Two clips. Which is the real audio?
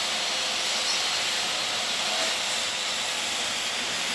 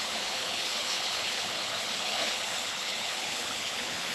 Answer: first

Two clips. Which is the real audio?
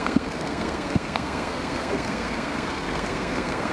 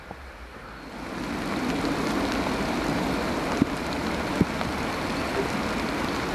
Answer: second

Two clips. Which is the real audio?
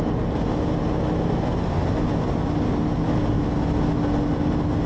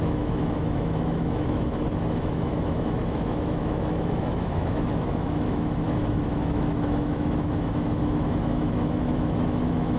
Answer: first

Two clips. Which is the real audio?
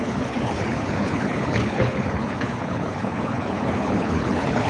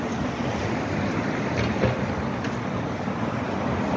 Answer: second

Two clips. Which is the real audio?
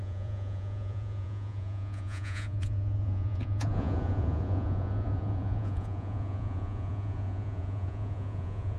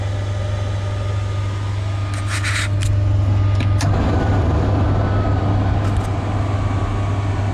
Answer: second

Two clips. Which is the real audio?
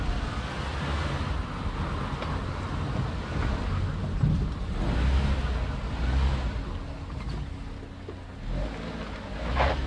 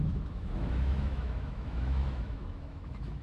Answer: first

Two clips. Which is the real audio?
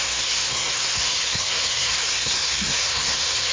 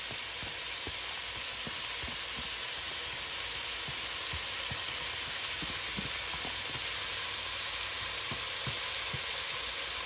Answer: second